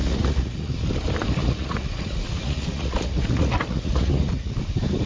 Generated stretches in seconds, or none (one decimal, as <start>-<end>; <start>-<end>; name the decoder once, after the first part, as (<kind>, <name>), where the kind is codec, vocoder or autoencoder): 0.0-0.7 (vocoder, Vocos); 1.4-4.5